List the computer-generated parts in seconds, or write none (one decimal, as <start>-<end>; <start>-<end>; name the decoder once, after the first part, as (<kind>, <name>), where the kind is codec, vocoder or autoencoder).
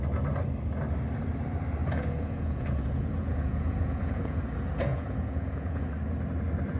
1.8-4.4 (vocoder, Vocos); 4.9-5.8